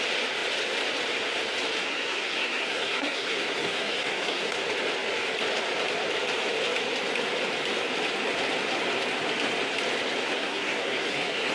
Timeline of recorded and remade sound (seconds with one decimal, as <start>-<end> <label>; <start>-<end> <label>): 0.0-1.8 recorded; 1.8-4.6 remade; 4.6-10.2 recorded; 10.2-11.5 remade